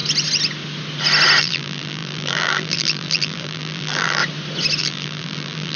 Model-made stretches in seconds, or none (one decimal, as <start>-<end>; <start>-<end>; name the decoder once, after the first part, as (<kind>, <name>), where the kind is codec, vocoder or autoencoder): 1.4-4.2 (vocoder, BigVGAN v2); 4.8-5.8